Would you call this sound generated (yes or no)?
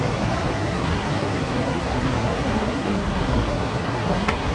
yes